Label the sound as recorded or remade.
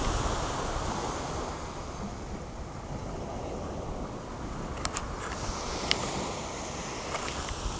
recorded